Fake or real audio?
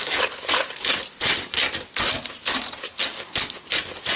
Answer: real